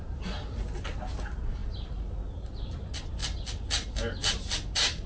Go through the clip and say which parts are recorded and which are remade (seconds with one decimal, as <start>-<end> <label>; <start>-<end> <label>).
0.0-5.1 recorded